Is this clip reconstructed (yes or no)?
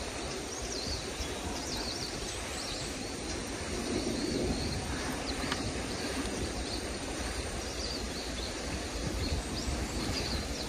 yes